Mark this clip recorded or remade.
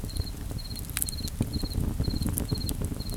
recorded